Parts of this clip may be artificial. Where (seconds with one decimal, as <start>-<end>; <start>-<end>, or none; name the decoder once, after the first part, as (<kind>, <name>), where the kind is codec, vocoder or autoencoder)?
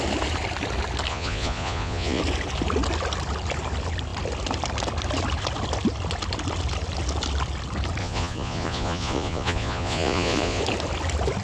1.1-2.2 (vocoder, Vocos); 8.0-10.6